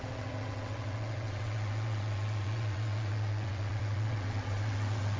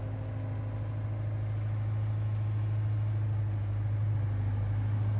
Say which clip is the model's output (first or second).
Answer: first